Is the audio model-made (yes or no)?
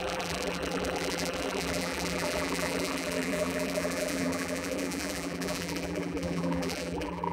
yes